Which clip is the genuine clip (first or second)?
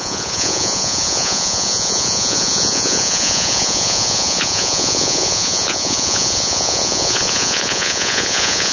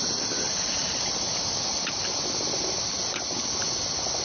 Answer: second